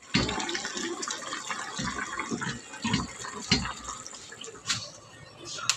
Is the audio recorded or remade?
recorded